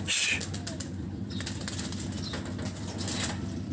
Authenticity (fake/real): real